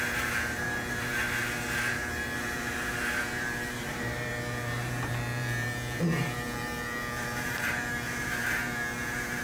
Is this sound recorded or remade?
remade